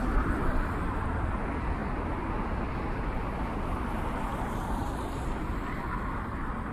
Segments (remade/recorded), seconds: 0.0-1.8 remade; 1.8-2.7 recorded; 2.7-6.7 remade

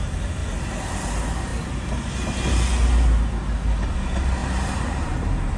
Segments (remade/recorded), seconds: 0.0-4.4 recorded; 4.4-5.6 remade

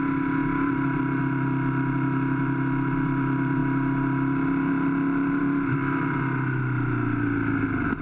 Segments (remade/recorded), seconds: 0.0-8.0 recorded

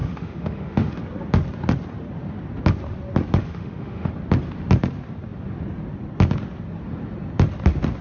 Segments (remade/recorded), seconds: 0.0-1.0 remade; 1.0-3.4 recorded; 3.4-4.1 remade; 4.1-8.0 recorded